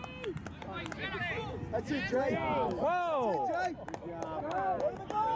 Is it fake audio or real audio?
real